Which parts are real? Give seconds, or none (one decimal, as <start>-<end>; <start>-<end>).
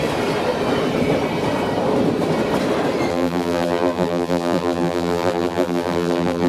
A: 0.0-3.1